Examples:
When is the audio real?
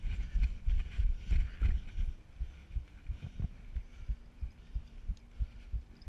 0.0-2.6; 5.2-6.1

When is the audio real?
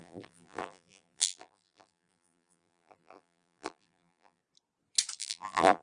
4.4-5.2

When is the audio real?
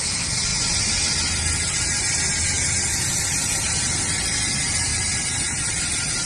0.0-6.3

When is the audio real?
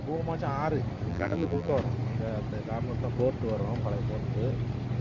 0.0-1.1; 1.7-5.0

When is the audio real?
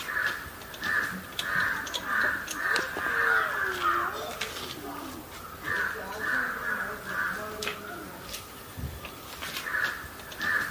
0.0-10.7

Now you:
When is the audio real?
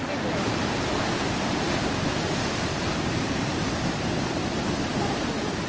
4.4-5.1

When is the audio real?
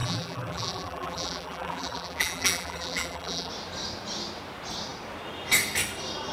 3.5-6.3